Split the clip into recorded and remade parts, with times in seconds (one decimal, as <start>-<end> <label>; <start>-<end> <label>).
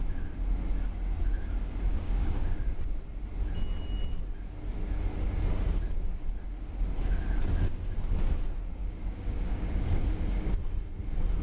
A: 0.0-1.9 recorded; 1.9-2.7 remade; 2.7-8.8 recorded; 8.8-10.5 remade; 10.5-11.4 recorded